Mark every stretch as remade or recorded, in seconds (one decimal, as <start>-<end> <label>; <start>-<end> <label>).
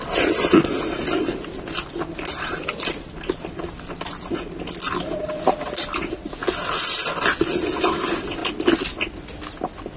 0.0-10.0 recorded